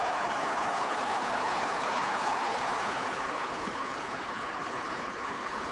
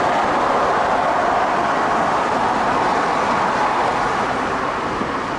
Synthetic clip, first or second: first